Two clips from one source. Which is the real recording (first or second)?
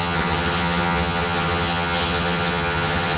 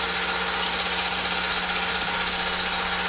second